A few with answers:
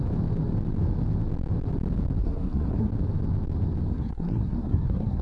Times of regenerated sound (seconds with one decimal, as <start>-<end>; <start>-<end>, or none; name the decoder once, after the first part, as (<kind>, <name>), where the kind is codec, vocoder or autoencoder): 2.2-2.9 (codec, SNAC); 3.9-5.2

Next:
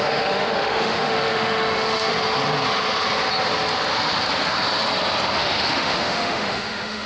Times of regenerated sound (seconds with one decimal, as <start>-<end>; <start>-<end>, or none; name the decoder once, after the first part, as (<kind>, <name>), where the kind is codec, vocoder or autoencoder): 0.0-2.1 (autoencoder, DAC-VAE); 5.4-7.1

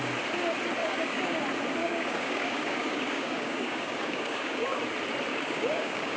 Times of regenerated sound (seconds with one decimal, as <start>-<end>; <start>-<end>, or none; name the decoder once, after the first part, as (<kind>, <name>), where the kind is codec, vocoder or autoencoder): 0.8-1.4 (codec, DAC); 1.8-4.8; 5.3-6.2